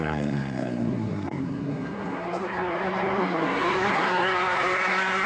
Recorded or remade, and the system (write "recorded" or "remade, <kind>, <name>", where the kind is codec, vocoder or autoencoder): remade, codec, SNAC